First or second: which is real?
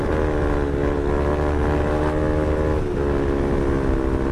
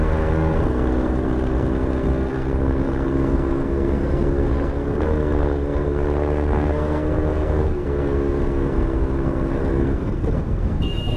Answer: first